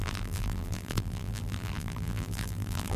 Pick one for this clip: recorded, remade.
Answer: remade